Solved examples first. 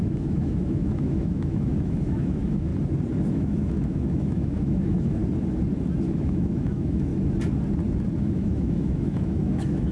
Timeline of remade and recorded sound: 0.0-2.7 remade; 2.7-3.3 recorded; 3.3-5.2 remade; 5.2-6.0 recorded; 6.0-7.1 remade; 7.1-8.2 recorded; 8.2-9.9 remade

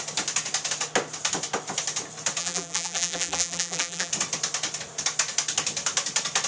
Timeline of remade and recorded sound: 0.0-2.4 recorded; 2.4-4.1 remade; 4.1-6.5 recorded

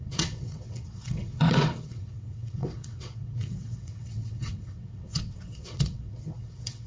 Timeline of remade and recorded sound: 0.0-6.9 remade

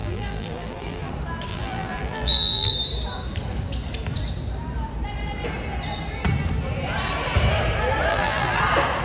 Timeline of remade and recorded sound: 0.0-1.1 remade; 1.1-1.5 recorded; 1.5-2.7 remade; 2.7-8.1 recorded; 8.1-8.6 remade; 8.6-9.0 recorded

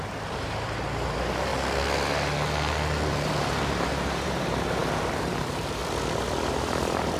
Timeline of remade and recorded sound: 0.0-1.5 remade; 1.5-3.1 recorded; 3.1-5.8 remade; 5.8-6.5 recorded; 6.5-7.2 remade

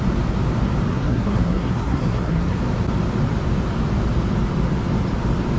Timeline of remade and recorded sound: 0.0-0.9 recorded; 0.9-2.6 remade; 2.6-5.6 recorded

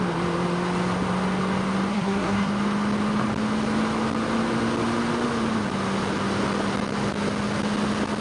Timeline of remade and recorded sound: 0.0-1.9 recorded; 1.9-2.5 remade; 2.5-8.2 recorded